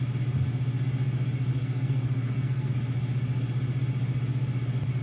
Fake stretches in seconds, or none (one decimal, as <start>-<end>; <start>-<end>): 1.5-2.7